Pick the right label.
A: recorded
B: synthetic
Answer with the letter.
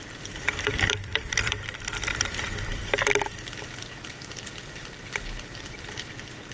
B